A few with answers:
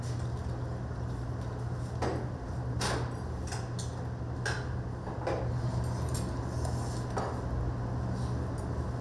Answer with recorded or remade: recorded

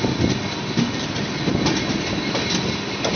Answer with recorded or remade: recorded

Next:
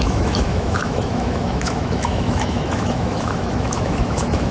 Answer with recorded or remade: remade